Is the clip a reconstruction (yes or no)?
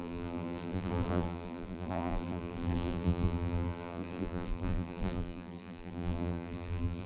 yes